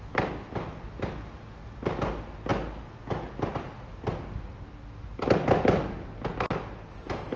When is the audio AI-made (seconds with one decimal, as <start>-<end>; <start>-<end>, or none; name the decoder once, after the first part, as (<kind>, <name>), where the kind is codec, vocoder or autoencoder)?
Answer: none